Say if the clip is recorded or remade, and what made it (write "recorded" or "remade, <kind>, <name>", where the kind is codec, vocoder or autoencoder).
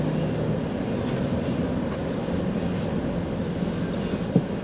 recorded